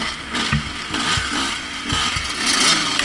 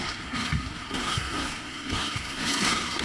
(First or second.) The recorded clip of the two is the first